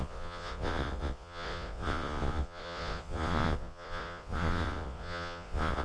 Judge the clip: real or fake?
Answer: fake